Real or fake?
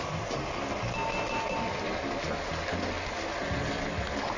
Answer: real